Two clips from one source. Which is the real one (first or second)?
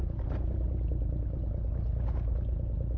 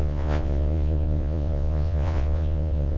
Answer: first